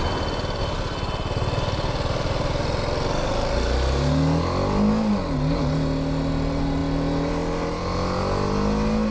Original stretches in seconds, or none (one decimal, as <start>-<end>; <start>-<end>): 0.0-9.1